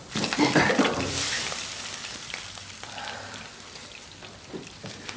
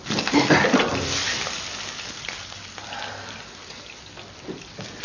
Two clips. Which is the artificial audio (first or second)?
first